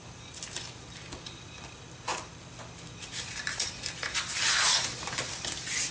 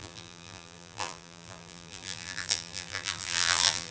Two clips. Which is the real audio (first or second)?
first